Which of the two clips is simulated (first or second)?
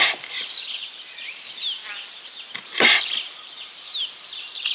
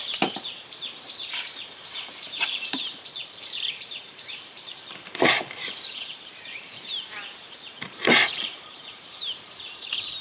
second